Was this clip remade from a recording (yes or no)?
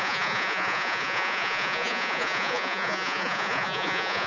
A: yes